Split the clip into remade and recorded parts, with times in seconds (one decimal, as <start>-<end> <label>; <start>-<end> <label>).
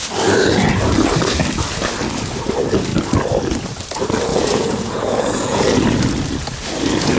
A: 0.0-4.3 recorded; 4.3-5.6 remade; 5.6-7.2 recorded